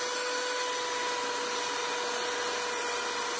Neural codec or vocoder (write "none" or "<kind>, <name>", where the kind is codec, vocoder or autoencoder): none